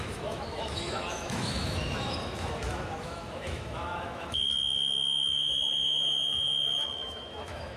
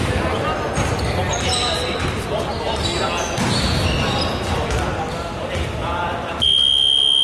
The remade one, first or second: first